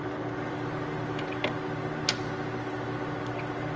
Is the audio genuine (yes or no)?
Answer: yes